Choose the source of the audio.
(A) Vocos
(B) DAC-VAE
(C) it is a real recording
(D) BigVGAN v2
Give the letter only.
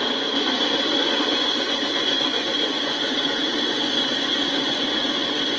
A